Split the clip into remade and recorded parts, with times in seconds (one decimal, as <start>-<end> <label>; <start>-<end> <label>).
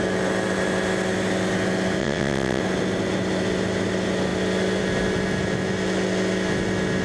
0.0-2.0 recorded; 2.0-2.6 remade; 2.6-7.0 recorded